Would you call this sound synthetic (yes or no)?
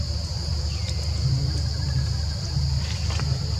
no